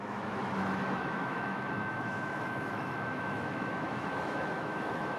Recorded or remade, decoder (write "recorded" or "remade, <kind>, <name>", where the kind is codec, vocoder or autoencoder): remade, autoencoder, DAC-VAE